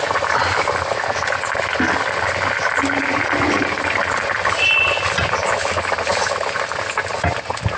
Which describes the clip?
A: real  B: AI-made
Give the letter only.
A